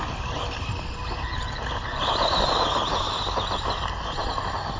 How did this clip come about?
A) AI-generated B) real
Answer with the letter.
B